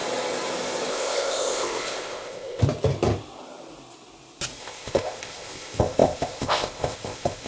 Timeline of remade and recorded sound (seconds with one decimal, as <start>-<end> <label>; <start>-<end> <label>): 0.0-0.9 recorded; 0.9-2.6 remade; 2.6-4.6 recorded; 4.6-7.5 remade